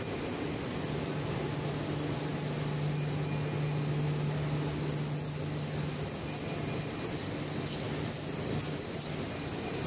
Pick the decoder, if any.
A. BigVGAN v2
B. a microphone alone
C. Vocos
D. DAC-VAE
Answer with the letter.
B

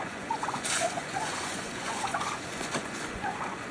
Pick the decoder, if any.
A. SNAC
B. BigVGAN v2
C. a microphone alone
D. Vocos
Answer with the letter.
D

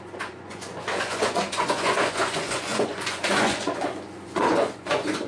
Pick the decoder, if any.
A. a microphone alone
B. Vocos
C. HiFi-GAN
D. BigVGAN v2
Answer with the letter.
B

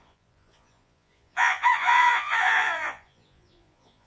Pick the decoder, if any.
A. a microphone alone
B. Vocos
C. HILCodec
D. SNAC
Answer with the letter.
B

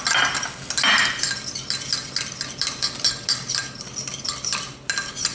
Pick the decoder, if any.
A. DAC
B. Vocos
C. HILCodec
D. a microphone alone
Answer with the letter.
D